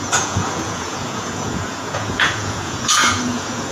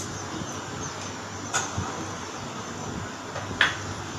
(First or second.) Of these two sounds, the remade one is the first